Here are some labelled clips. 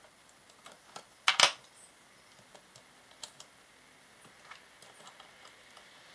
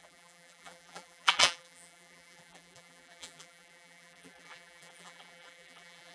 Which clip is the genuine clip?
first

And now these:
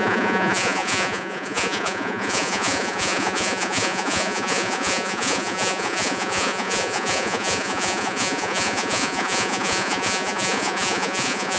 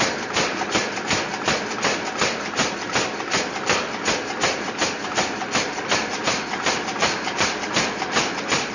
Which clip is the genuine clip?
second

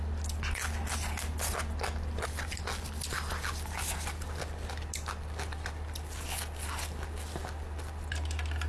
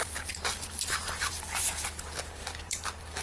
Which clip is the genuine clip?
first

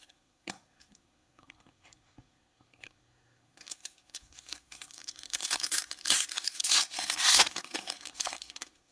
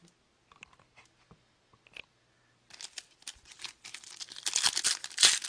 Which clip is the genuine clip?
second